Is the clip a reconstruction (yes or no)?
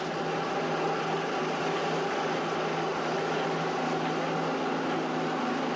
no